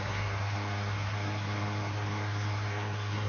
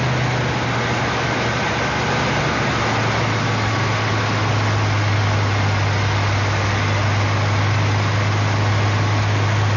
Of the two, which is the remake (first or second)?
first